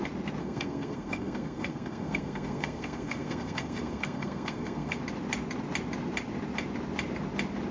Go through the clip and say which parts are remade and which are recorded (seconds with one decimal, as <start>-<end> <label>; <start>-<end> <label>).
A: 0.0-0.4 recorded; 0.4-5.0 remade; 5.0-7.7 recorded